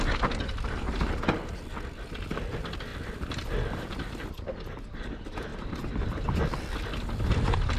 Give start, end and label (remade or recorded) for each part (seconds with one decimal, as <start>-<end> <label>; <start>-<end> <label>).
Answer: 0.0-2.9 recorded; 2.9-5.1 remade; 5.1-5.5 recorded; 5.5-6.6 remade; 6.6-7.8 recorded